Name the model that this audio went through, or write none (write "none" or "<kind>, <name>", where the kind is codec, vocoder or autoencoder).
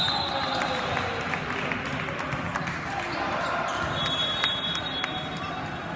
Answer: none